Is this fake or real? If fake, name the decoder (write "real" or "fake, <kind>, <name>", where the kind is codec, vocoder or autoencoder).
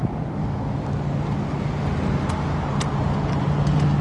real